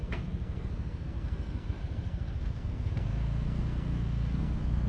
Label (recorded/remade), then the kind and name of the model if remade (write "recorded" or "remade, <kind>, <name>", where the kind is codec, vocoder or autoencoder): remade, codec, SNAC